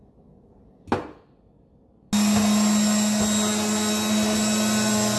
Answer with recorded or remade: recorded